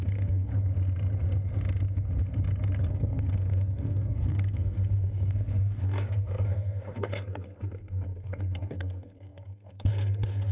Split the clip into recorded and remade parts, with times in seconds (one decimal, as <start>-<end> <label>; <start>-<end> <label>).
0.0-0.5 remade; 0.5-2.9 recorded; 2.9-10.5 remade